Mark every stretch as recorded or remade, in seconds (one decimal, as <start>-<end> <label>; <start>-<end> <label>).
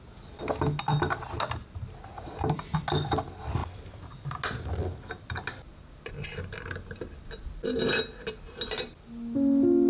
0.0-9.9 recorded